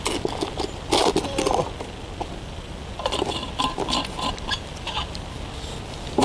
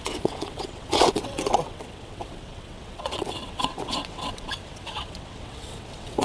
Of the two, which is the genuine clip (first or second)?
first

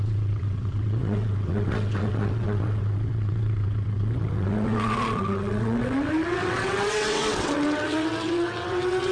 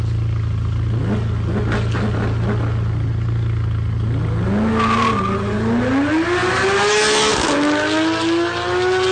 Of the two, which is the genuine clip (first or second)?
second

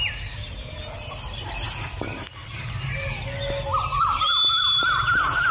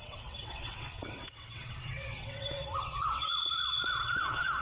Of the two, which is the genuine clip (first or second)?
first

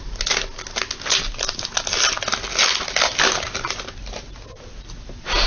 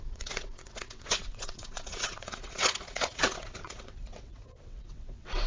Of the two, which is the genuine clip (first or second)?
first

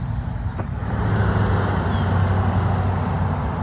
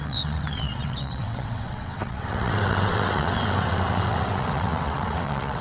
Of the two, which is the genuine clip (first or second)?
first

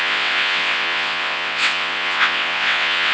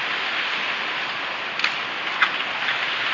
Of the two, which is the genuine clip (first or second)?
second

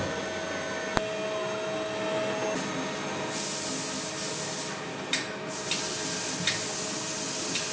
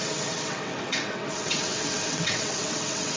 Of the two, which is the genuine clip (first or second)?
first